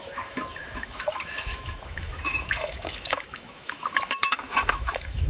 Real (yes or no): no